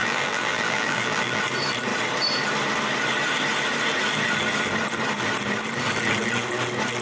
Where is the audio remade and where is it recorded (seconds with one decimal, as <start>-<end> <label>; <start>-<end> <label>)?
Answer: 0.0-1.4 remade; 1.4-7.0 recorded